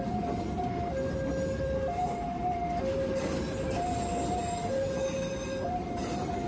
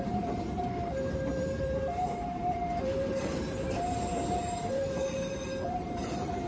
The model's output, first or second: second